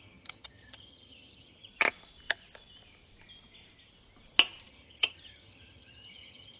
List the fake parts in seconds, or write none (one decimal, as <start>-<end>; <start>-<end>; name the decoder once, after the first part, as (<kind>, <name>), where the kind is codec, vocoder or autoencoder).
0.0-1.7 (vocoder, HiFi-GAN); 4.7-6.6